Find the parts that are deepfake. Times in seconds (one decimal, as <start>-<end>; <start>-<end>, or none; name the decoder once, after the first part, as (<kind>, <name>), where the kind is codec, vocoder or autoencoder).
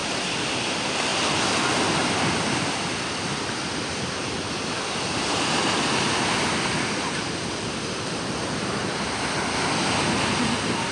none